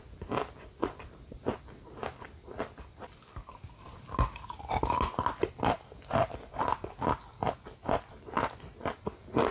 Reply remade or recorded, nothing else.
recorded